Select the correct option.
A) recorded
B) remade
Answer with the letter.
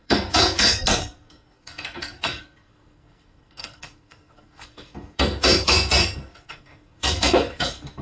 B